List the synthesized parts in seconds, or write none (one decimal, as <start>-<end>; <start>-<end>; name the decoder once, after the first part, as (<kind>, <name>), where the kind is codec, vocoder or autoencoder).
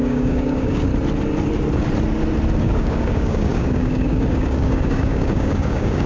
0.0-0.9 (codec, DAC); 2.6-6.1